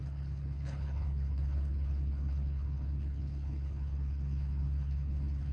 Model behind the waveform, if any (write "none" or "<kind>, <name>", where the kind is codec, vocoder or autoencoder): codec, HILCodec